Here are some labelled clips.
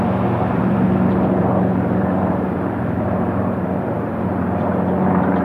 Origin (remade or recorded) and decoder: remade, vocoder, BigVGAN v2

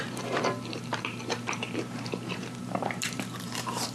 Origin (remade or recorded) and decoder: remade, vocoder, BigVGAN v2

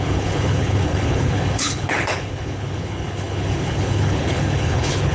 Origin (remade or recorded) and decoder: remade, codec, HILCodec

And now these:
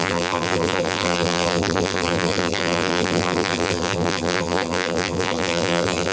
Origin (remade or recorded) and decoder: remade, vocoder, BigVGAN v2